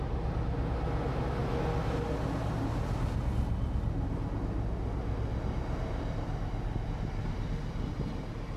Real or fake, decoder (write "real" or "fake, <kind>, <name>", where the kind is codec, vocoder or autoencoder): real